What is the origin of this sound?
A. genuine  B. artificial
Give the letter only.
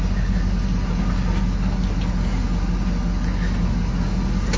A